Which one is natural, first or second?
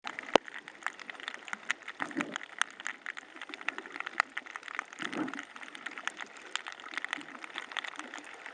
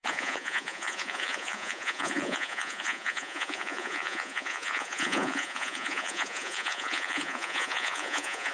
first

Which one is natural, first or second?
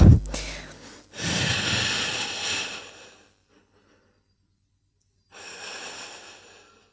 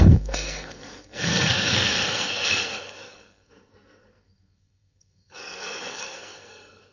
first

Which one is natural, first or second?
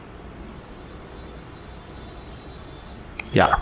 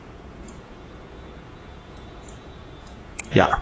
first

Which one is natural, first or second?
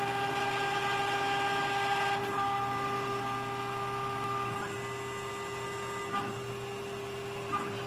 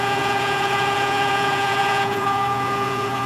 first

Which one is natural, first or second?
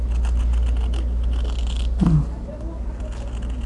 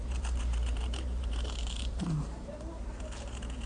first